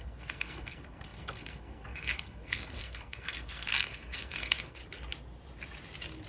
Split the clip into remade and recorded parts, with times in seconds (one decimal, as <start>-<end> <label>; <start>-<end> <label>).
0.0-4.8 remade; 4.8-6.3 recorded